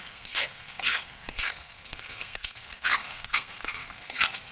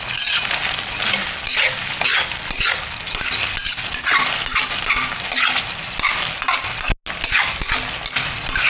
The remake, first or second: first